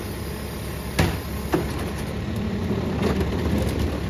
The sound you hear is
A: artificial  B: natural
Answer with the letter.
B